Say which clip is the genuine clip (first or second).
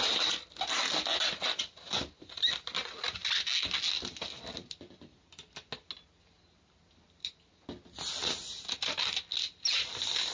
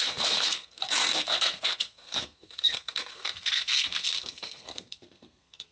first